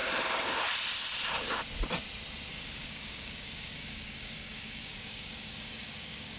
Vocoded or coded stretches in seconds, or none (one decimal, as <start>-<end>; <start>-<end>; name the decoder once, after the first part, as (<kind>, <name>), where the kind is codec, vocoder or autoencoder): 2.5-6.4 (codec, DAC)